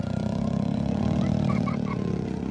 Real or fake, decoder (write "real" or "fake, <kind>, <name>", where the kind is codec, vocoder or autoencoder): fake, vocoder, Vocos